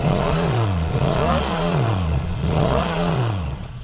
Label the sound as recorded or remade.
remade